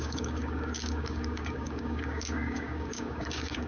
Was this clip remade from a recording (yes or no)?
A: yes